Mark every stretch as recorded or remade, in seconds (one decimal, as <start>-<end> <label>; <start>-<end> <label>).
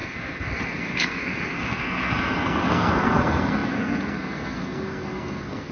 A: 0.0-5.7 remade